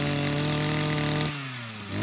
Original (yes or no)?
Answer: yes